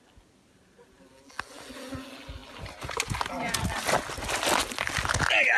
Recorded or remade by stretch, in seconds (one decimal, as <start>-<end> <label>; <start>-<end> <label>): 0.0-5.6 recorded